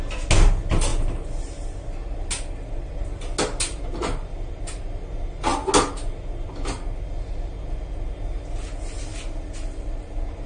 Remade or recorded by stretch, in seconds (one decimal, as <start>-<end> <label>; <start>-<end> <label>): 0.0-10.5 recorded